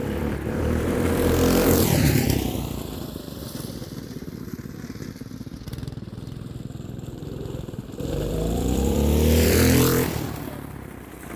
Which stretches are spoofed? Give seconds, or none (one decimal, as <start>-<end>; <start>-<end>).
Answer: 0.0-11.4